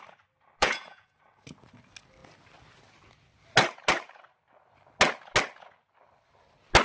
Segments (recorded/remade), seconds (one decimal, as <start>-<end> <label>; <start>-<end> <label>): 0.0-0.6 recorded; 0.6-1.2 remade; 1.2-6.8 recorded